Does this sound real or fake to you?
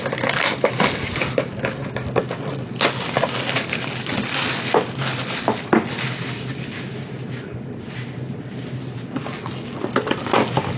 real